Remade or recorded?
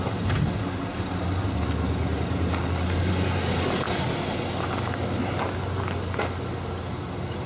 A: recorded